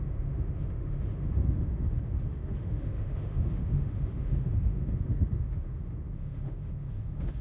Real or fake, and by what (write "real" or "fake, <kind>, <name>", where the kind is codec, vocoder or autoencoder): fake, autoencoder, DAC-VAE